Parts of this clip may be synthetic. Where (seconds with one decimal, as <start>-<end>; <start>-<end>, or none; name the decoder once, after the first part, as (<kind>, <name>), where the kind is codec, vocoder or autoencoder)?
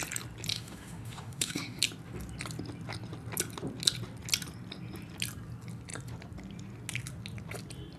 0.5-1.8 (autoencoder, DAC-VAE)